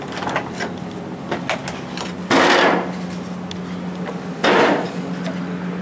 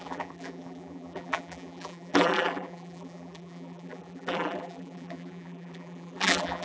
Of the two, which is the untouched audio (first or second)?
first